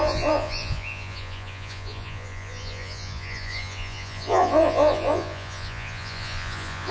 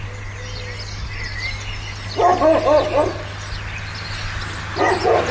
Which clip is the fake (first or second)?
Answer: first